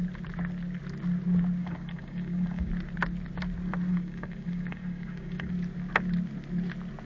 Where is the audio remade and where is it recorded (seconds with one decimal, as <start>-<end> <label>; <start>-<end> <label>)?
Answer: 0.0-1.6 recorded; 1.6-2.7 remade; 2.7-3.9 recorded; 3.9-5.5 remade; 5.5-7.0 recorded